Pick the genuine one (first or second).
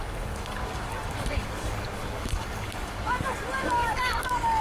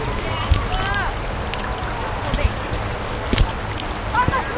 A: second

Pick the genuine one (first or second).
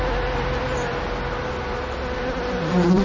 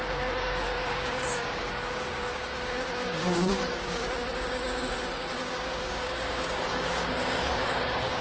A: first